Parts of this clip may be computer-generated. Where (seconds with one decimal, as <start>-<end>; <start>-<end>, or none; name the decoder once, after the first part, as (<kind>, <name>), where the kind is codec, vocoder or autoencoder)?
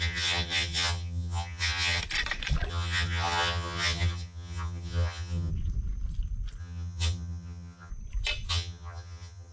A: 0.0-2.0 (vocoder, HiFi-GAN); 2.7-5.5; 6.6-7.9; 8.5-9.5